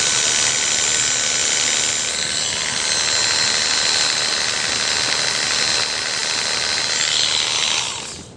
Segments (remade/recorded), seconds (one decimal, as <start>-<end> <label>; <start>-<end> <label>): 0.0-6.2 recorded; 6.2-6.8 remade; 6.8-8.4 recorded